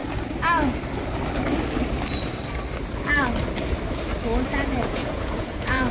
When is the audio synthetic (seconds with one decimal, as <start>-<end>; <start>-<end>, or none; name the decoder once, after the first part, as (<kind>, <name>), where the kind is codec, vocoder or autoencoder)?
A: 4.5-5.9 (vocoder, Vocos)